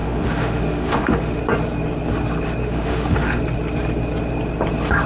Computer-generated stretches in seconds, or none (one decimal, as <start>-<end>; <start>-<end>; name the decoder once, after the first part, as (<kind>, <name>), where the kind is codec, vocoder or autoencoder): 0.0-1.4 (autoencoder, DAC-VAE); 2.6-3.4